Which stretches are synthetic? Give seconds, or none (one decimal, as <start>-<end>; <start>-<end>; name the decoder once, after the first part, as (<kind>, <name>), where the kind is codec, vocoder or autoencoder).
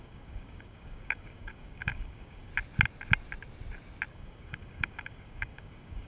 0.0-2.5 (codec, DAC); 4.1-6.1